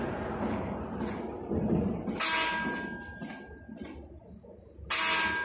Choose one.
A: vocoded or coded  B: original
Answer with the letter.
B